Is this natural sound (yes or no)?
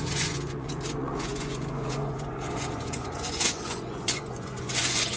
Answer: no